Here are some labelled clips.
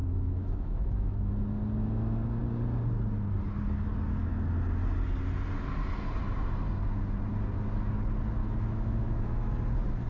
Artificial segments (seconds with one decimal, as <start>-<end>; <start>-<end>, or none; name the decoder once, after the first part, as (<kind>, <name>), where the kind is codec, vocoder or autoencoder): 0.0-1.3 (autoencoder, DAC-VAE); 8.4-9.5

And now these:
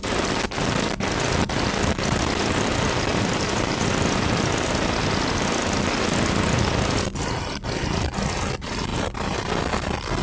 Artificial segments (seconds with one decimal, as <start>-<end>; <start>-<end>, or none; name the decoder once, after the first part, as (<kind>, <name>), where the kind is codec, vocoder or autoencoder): 3.1-3.9 (vocoder, BigVGAN v2); 8.9-9.5

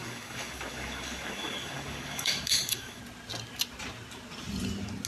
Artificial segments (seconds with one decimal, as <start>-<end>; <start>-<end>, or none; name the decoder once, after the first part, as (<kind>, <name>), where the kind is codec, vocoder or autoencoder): 0.0-3.0 (codec, DAC)

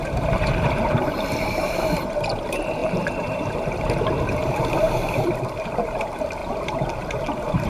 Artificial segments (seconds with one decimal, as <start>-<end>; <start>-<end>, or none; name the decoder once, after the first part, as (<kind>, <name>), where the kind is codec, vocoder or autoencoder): 0.0-6.4 (vocoder, BigVGAN v2)

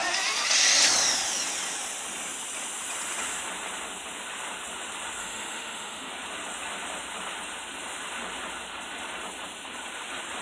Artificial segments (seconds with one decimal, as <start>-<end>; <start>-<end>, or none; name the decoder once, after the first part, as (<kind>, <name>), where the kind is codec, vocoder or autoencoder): 5.2-6.1 (autoencoder, DAC-VAE)